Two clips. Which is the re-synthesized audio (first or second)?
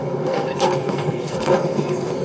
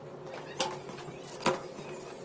first